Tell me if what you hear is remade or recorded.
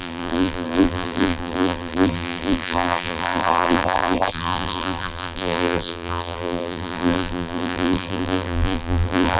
remade